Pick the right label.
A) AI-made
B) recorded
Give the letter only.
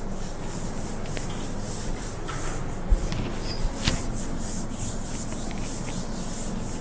B